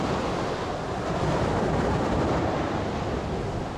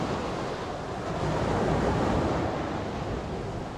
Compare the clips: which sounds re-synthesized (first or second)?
first